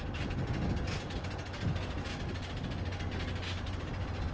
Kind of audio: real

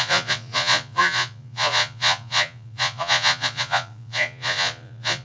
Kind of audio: fake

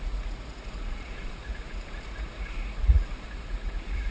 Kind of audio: fake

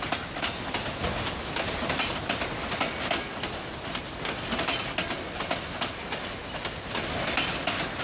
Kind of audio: real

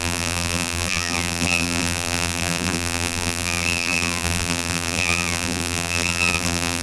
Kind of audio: fake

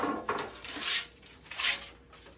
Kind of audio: real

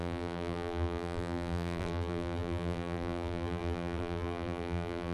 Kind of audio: fake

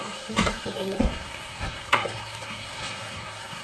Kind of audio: fake